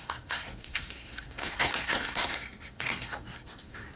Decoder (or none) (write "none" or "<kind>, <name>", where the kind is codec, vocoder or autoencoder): codec, SNAC